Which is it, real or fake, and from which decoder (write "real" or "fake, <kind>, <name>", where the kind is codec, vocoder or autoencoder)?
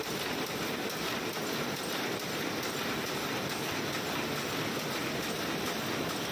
real